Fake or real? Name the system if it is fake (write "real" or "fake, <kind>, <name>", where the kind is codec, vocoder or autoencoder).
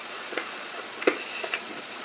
fake, vocoder, Vocos